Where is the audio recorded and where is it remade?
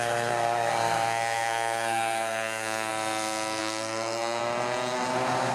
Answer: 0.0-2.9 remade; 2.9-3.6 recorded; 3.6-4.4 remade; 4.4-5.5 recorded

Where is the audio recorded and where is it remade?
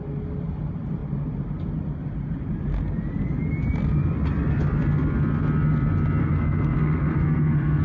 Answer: 0.0-6.2 recorded; 6.2-7.8 remade